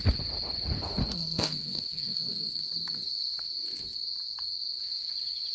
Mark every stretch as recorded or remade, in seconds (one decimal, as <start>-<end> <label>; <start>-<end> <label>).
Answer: 0.0-1.0 recorded; 1.0-2.6 remade; 2.6-5.5 recorded